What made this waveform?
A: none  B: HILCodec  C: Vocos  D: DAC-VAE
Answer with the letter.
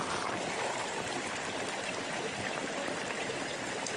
A